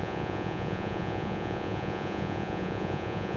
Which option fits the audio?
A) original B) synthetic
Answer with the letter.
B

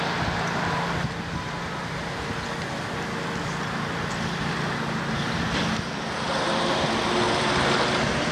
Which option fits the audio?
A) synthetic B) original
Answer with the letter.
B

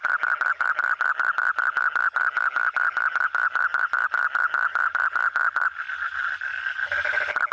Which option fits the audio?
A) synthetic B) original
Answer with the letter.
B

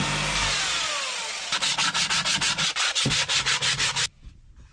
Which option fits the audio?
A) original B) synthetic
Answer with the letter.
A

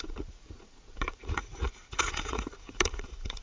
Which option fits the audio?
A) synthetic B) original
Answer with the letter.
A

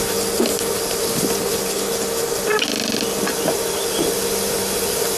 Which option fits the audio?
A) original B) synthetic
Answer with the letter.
A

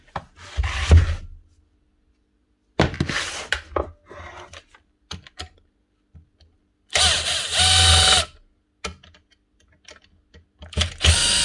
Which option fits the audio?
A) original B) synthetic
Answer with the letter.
A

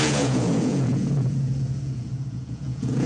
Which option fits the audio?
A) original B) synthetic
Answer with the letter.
B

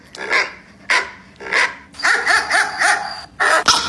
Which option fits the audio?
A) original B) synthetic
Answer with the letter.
A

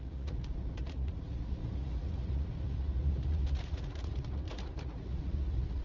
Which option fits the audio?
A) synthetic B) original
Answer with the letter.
A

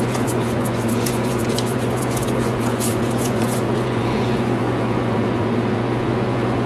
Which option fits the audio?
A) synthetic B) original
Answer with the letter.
A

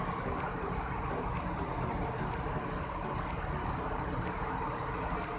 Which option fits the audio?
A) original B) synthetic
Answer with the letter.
A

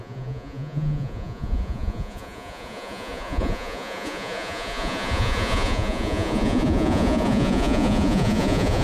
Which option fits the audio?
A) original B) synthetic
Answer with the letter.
B